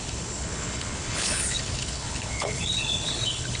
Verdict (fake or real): fake